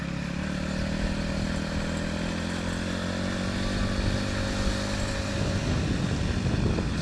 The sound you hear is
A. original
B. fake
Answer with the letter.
A